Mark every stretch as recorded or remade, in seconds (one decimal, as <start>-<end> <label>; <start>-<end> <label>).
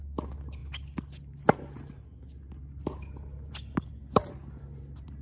0.0-5.2 recorded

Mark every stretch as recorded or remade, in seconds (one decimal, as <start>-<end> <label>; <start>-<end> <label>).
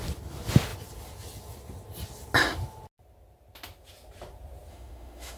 0.0-4.7 recorded; 4.7-5.4 remade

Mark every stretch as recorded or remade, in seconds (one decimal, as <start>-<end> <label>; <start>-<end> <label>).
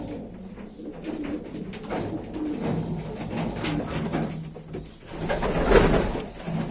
0.0-6.7 recorded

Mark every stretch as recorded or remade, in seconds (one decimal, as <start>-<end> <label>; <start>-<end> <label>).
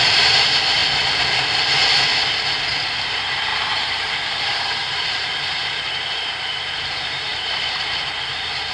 0.0-0.8 remade; 0.8-2.8 recorded; 2.8-8.7 remade